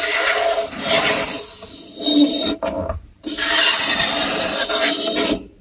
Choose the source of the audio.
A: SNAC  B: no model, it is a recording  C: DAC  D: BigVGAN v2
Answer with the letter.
B